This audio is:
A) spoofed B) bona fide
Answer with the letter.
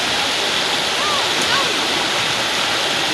B